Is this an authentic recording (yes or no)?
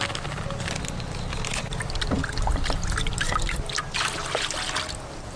yes